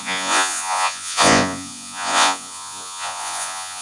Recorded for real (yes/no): no